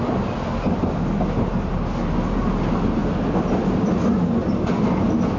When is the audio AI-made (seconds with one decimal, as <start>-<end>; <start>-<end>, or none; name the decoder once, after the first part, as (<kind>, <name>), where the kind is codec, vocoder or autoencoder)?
none